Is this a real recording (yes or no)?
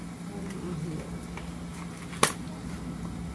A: yes